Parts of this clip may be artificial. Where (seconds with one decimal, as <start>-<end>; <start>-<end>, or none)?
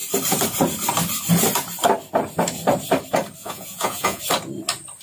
3.4-4.2